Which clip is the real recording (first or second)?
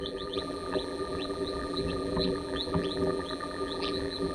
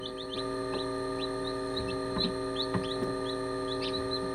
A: second